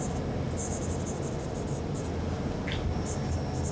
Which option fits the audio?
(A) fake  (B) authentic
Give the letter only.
B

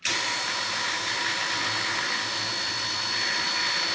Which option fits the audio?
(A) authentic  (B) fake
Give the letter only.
A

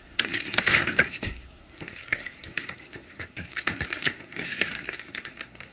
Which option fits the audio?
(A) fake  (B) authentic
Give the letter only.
A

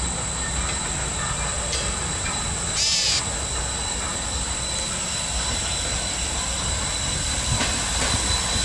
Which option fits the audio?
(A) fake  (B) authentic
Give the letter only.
B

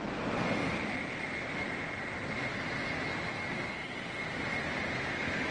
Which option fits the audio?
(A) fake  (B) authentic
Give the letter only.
B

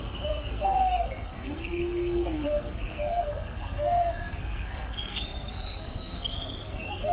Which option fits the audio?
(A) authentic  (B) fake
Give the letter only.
B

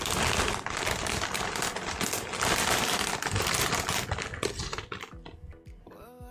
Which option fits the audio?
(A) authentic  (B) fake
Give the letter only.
A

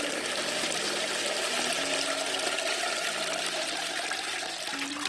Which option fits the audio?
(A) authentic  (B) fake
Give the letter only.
A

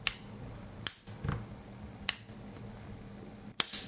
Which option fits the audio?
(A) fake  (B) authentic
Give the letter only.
B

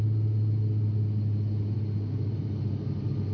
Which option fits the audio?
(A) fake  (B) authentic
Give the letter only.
B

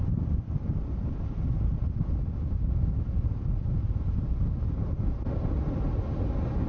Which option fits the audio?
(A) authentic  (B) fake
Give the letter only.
A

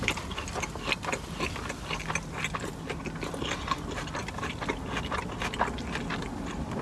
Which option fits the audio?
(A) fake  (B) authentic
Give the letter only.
B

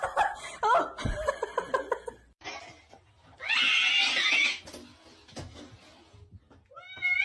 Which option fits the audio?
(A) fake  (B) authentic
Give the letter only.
B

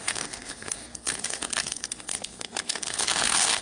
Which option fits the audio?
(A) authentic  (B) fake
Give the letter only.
B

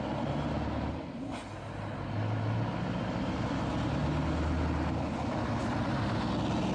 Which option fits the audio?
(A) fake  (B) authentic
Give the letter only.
B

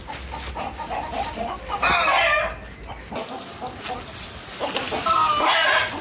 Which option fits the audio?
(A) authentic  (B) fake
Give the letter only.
A